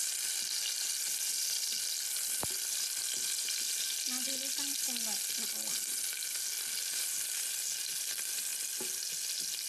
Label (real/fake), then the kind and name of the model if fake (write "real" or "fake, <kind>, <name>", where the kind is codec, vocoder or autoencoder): real